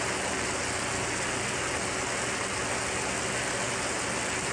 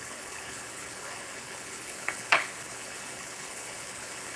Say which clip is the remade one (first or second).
second